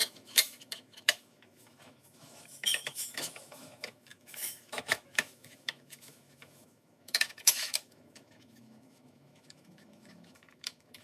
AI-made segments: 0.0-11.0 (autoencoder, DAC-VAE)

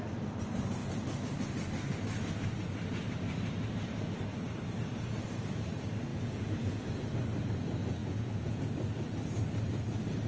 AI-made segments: 6.1-6.9 (vocoder, Vocos); 8.0-8.6

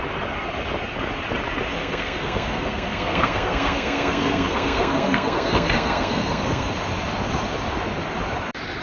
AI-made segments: 1.8-6.7 (codec, SNAC)

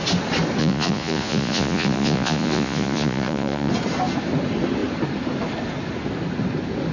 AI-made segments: 0.6-3.7 (vocoder, Vocos)